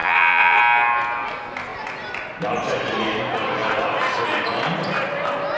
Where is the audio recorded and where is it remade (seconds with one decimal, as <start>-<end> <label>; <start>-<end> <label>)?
0.0-0.6 remade; 0.6-5.6 recorded